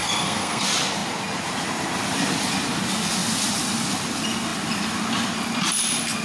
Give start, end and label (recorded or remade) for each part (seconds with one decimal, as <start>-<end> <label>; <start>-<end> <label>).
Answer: 0.0-0.6 remade; 0.6-6.2 recorded